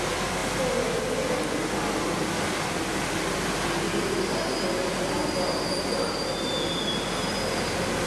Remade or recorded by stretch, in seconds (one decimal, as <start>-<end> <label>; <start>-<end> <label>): 0.0-8.1 recorded